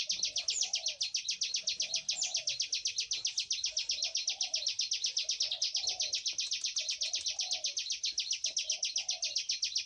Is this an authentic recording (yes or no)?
yes